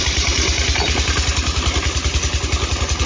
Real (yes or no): yes